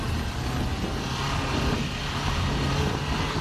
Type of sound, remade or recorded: recorded